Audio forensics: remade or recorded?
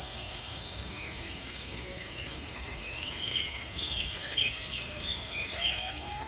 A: remade